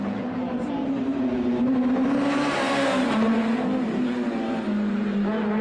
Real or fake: real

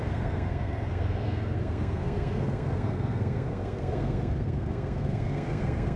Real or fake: fake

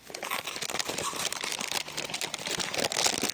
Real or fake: real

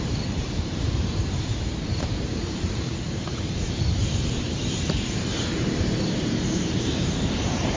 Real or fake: fake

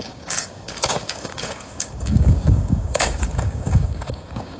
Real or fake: fake